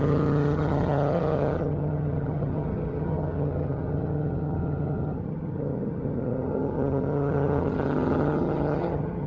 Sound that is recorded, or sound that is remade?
remade